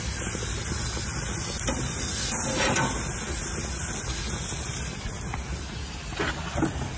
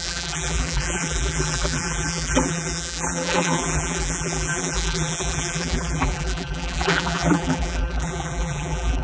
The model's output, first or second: second